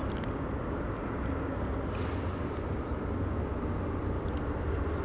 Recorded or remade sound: recorded